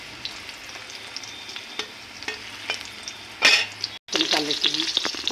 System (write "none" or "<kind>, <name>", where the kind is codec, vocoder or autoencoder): none